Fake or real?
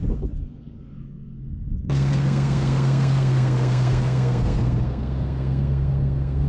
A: fake